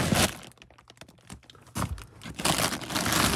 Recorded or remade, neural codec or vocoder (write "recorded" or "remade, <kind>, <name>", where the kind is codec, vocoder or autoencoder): recorded